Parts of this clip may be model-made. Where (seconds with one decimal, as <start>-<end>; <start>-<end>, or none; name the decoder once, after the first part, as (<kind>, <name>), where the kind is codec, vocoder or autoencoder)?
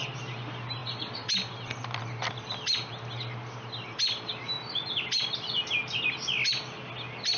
none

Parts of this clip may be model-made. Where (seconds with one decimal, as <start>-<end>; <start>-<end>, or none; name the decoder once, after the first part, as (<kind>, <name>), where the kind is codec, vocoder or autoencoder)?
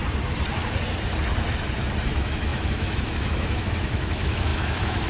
2.1-5.1 (autoencoder, DAC-VAE)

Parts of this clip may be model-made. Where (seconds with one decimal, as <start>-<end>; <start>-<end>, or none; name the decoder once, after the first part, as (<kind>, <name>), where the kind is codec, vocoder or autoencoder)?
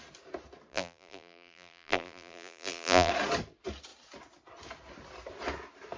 0.7-3.1 (vocoder, BigVGAN v2)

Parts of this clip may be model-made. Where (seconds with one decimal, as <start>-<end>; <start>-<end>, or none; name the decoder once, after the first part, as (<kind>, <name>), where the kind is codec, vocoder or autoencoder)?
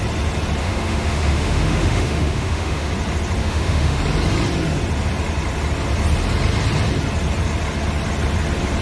0.6-2.9 (autoencoder, DAC-VAE); 3.4-4.0